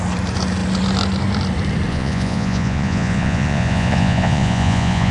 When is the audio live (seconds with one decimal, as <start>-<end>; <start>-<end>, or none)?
0.0-1.9